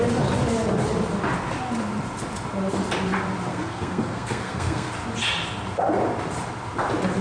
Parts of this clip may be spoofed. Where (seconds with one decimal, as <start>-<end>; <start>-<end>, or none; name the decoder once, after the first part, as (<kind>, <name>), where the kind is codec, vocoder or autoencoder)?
3.5-4.9 (codec, SNAC)